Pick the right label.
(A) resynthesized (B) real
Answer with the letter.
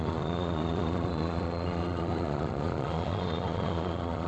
A